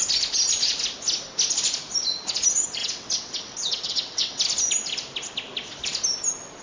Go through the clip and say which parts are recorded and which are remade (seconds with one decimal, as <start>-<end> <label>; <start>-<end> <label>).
0.0-2.8 recorded; 2.8-4.4 remade; 4.4-6.6 recorded